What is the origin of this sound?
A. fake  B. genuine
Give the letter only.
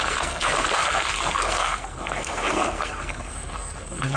A